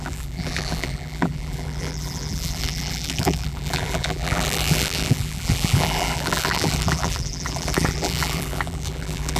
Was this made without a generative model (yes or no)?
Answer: no